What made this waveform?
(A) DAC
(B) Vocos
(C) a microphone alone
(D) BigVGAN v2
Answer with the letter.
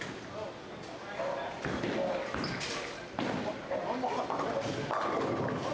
C